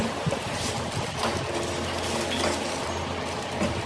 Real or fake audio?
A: real